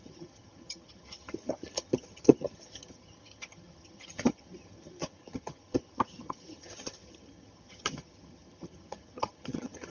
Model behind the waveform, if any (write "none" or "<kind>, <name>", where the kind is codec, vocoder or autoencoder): vocoder, HiFi-GAN